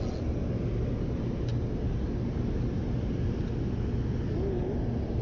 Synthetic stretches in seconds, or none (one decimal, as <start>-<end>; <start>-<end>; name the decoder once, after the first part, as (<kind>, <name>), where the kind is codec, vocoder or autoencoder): none

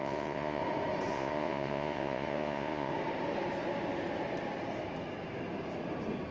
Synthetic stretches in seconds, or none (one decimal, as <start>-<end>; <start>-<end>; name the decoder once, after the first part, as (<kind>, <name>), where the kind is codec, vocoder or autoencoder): 0.0-0.6 (vocoder, Vocos); 1.1-2.9